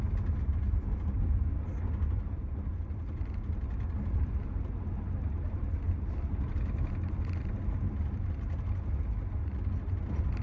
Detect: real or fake real